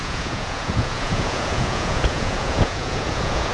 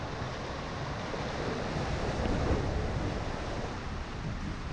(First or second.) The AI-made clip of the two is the first